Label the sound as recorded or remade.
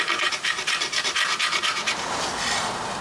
remade